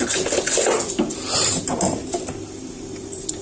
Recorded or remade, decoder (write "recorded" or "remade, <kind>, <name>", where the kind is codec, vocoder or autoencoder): recorded